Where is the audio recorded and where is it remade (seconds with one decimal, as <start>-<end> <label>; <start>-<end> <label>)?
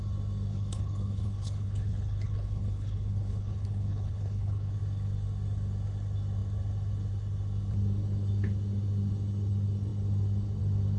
0.0-0.5 recorded; 0.5-4.7 remade; 4.7-11.0 recorded